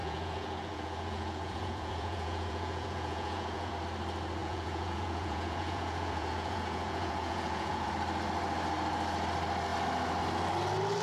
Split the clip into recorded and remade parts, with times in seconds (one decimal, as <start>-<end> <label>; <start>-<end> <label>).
0.0-3.7 remade; 3.7-4.4 recorded; 4.4-7.9 remade; 7.9-11.0 recorded